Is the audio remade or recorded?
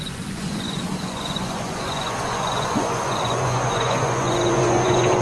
remade